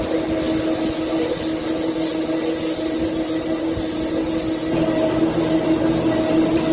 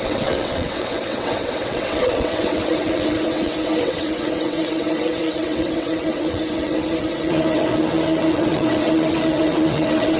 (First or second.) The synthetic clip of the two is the second